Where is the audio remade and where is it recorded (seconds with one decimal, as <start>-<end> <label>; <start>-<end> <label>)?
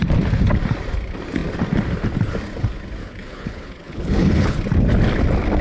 0.0-3.0 recorded; 3.0-4.6 remade; 4.6-5.6 recorded